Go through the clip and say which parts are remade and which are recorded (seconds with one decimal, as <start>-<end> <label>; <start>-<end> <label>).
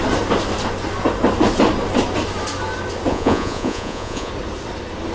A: 0.0-3.1 recorded; 3.1-4.3 remade; 4.3-5.1 recorded